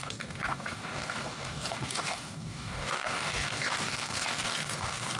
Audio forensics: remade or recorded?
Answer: remade